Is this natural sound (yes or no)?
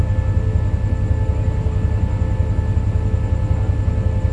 yes